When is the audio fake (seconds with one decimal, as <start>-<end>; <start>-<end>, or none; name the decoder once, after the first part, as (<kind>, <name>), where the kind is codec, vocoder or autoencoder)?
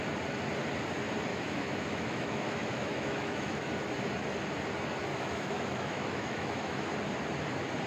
1.3-3.7 (autoencoder, DAC-VAE); 5.1-6.8